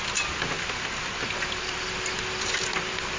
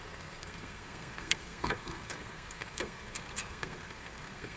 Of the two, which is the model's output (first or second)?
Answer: second